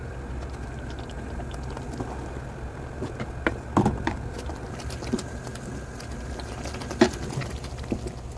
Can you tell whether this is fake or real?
real